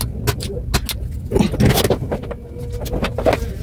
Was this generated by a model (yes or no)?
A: no